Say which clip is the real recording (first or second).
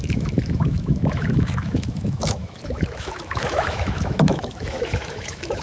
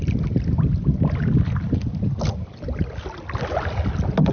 second